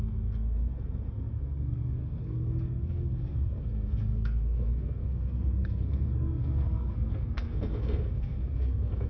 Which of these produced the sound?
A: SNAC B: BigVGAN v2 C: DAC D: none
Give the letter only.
A